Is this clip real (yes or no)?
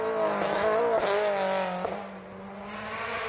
yes